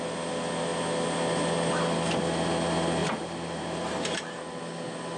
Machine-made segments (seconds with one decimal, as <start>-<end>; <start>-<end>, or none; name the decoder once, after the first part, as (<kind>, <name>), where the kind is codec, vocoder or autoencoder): 3.0-4.6 (vocoder, BigVGAN v2)